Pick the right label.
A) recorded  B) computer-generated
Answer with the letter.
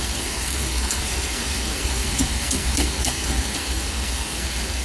B